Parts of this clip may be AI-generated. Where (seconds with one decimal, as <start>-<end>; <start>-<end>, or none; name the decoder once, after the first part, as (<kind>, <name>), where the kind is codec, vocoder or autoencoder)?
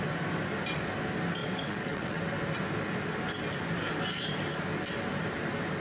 1.4-2.2 (vocoder, WaveNeXt)